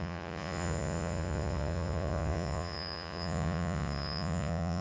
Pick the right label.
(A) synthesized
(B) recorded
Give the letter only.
A